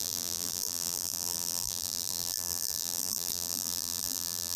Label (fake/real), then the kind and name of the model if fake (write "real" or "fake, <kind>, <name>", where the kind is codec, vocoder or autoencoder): fake, vocoder, BigVGAN v2